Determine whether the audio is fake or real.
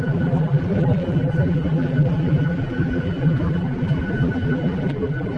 fake